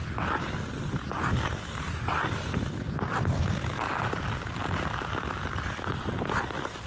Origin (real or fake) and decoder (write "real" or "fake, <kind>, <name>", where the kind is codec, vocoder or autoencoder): real